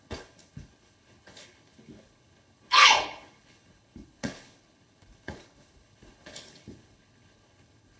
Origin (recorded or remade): remade